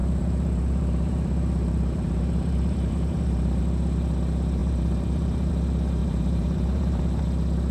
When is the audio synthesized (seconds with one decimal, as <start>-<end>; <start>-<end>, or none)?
0.0-3.6; 4.6-5.5; 6.0-7.2